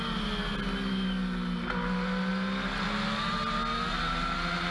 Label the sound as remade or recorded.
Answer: recorded